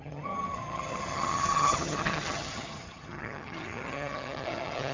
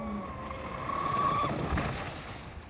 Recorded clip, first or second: second